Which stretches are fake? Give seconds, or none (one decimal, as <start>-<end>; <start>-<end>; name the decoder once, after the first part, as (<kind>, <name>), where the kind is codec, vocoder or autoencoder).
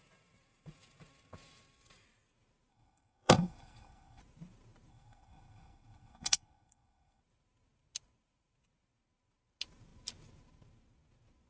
2.7-4.2 (codec, SNAC); 4.9-7.2